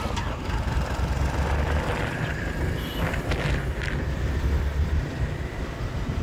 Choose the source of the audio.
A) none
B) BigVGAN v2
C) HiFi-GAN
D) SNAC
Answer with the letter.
A